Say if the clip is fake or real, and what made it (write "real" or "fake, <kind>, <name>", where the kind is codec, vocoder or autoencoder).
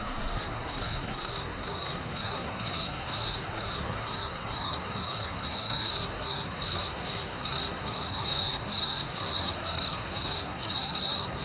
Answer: fake, codec, SNAC